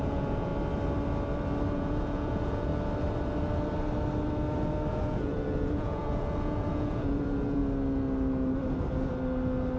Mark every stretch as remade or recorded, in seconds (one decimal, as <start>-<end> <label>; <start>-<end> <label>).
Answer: 0.0-0.5 remade; 0.5-1.7 recorded; 1.7-2.7 remade; 2.7-4.9 recorded; 4.9-7.6 remade; 7.6-9.8 recorded